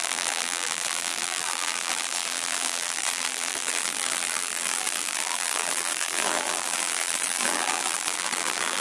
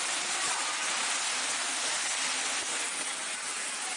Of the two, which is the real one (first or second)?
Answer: second